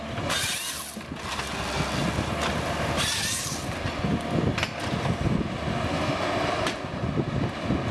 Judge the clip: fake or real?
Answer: real